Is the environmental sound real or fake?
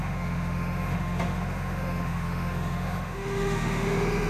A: fake